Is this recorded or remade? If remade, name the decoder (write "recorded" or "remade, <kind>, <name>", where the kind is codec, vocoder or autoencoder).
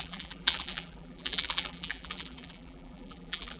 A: remade, vocoder, BigVGAN v2